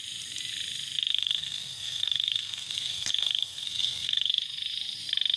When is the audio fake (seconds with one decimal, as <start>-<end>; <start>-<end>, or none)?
1.1-4.3